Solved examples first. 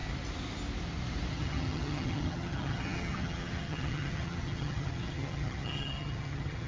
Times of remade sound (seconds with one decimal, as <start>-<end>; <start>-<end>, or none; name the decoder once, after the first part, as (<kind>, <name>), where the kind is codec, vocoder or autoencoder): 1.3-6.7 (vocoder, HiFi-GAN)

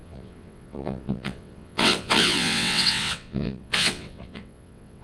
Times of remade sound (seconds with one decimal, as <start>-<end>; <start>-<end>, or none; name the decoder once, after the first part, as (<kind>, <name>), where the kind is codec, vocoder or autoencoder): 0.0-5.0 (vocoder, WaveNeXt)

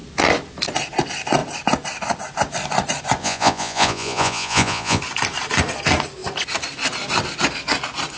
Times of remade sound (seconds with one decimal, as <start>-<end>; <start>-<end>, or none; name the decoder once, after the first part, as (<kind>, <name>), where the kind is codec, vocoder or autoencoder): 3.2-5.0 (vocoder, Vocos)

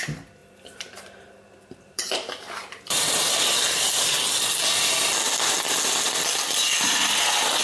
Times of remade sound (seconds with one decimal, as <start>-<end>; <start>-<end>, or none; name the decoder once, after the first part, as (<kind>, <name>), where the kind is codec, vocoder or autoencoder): 0.4-3.3 (vocoder, BigVGAN v2)

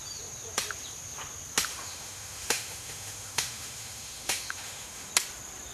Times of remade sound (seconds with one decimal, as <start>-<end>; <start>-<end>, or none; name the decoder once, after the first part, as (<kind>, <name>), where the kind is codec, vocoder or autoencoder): 1.7-5.1 (autoencoder, DAC-VAE)

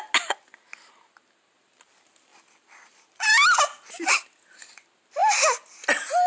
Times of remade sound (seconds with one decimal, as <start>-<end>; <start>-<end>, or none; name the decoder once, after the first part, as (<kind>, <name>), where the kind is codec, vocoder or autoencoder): none

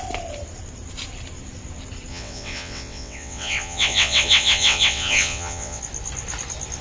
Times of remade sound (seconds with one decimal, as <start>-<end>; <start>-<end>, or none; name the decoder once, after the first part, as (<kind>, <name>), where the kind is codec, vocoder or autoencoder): 2.1-5.8 (vocoder, WaveNeXt)

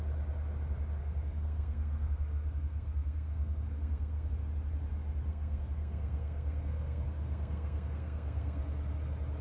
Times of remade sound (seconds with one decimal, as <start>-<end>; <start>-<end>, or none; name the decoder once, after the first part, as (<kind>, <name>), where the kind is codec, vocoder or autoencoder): 1.0-4.3 (codec, SNAC); 5.3-8.6